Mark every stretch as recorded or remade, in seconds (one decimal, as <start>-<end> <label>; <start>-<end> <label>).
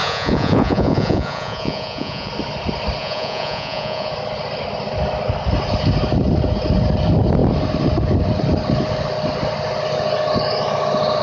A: 0.0-2.3 remade; 2.3-3.0 recorded; 3.0-4.1 remade; 4.1-11.2 recorded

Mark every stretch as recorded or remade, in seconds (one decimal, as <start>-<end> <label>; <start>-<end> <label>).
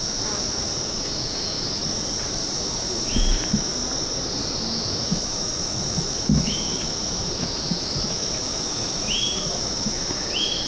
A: 0.0-1.8 remade; 1.8-2.5 recorded; 2.5-3.7 remade; 3.7-4.6 recorded; 4.6-10.7 remade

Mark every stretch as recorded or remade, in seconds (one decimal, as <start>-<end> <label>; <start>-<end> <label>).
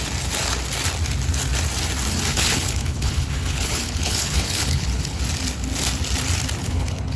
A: 0.0-2.3 recorded; 2.3-5.2 remade; 5.2-6.6 recorded; 6.6-7.2 remade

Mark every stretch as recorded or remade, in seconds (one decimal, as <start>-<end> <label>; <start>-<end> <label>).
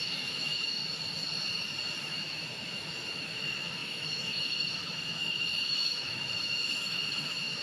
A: 0.0-0.8 remade; 0.8-2.0 recorded; 2.0-7.6 remade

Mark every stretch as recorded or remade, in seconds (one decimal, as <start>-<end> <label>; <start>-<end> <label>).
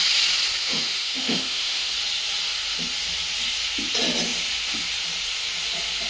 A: 0.0-0.6 recorded; 0.6-1.9 remade; 1.9-6.1 recorded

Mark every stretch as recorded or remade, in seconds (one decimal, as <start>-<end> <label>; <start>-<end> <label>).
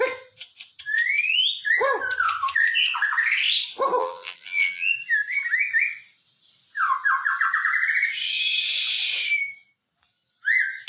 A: 0.0-4.0 recorded; 4.0-4.9 remade; 4.9-10.9 recorded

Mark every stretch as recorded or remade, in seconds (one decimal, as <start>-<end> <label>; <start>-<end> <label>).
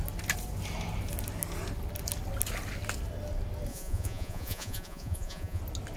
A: 0.0-3.7 recorded; 3.7-5.6 remade; 5.6-6.0 recorded